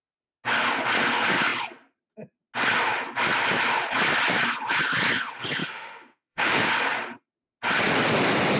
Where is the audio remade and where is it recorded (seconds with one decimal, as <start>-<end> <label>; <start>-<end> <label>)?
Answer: 0.0-5.6 recorded; 5.6-6.6 remade; 6.6-8.6 recorded